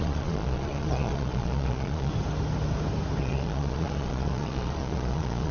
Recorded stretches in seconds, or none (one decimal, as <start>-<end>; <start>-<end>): 2.1-3.2